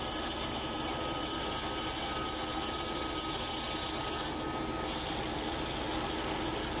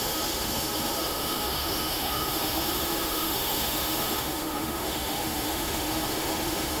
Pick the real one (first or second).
first